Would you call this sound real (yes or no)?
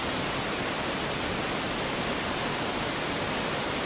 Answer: yes